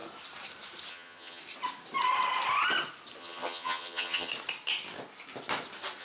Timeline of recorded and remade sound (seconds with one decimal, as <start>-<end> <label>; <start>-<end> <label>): 0.0-0.9 recorded; 0.9-1.4 remade; 1.4-3.2 recorded; 3.2-4.3 remade; 4.3-6.0 recorded